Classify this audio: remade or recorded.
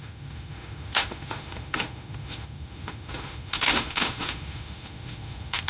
remade